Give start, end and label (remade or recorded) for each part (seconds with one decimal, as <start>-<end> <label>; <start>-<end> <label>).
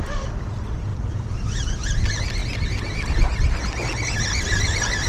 0.0-5.1 recorded